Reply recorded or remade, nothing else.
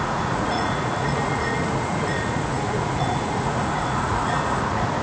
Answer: remade